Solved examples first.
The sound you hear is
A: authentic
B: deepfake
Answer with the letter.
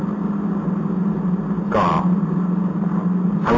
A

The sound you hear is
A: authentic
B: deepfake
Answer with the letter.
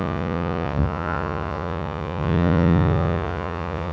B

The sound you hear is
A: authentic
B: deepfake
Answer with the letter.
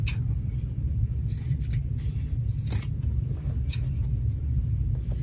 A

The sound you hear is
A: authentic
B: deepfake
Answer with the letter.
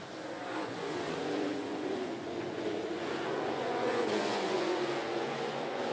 B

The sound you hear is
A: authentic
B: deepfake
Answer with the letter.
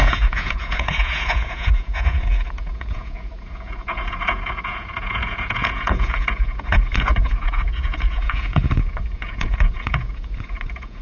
B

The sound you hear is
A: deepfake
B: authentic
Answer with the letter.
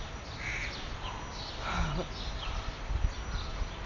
B